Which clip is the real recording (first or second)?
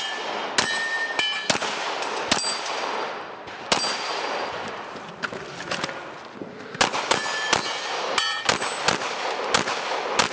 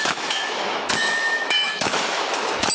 first